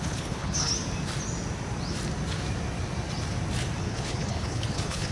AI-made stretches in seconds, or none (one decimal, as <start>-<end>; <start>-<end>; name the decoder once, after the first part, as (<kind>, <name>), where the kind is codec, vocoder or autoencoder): 0.0-0.7 (codec, HILCodec); 3.8-5.1